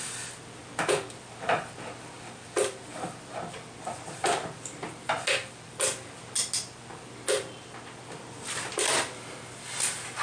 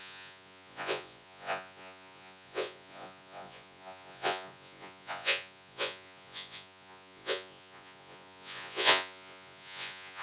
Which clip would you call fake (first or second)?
second